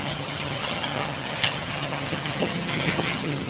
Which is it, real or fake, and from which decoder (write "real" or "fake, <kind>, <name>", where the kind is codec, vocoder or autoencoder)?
fake, vocoder, HiFi-GAN